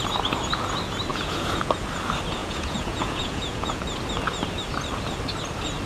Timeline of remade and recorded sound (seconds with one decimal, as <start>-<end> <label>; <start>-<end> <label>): 0.0-1.1 recorded; 1.1-1.8 remade; 1.8-2.4 recorded; 2.4-3.8 remade; 3.8-5.9 recorded